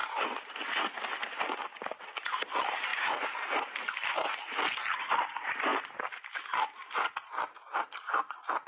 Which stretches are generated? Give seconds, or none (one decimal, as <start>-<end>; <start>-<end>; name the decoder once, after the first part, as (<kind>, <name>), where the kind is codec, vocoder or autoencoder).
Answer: 0.0-0.8 (vocoder, BigVGAN v2); 2.9-4.1